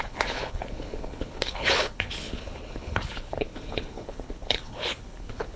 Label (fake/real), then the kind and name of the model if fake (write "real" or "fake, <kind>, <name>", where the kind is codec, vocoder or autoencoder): fake, codec, HILCodec